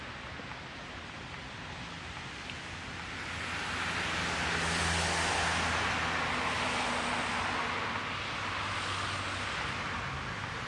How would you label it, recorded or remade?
recorded